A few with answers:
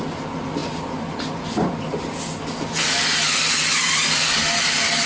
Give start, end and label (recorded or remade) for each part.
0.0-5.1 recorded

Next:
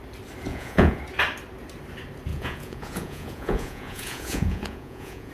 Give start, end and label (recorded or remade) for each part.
0.0-0.5 recorded; 0.5-1.0 remade; 1.0-2.3 recorded; 2.3-5.3 remade

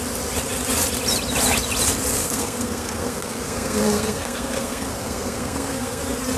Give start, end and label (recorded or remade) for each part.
0.0-2.2 recorded; 2.2-6.0 remade; 6.0-6.4 recorded